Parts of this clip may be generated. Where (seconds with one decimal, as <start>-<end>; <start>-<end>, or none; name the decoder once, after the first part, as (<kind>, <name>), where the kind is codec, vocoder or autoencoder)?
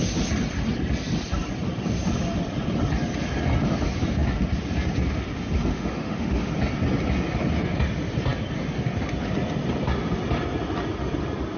5.7-6.5 (autoencoder, DAC-VAE)